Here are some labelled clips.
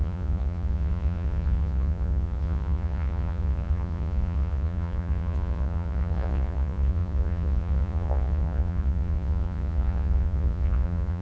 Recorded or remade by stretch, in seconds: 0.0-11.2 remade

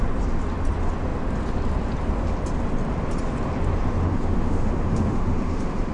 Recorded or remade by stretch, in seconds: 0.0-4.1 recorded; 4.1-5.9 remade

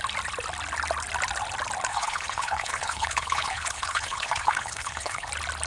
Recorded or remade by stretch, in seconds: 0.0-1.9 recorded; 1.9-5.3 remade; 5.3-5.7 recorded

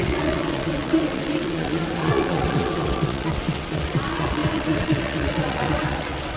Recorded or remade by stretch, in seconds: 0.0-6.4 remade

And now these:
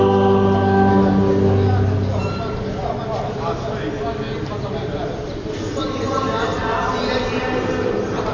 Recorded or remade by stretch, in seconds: 0.0-8.3 recorded

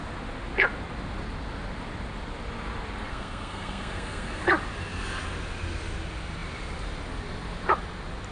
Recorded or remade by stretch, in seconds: 0.0-3.1 recorded; 3.1-4.4 remade; 4.4-8.3 recorded

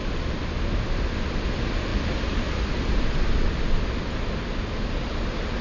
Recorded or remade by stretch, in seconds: 0.0-5.6 recorded